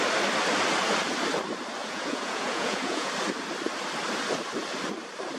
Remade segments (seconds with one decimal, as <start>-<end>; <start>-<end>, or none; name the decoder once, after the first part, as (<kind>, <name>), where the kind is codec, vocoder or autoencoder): 1.8-3.1 (vocoder, Vocos)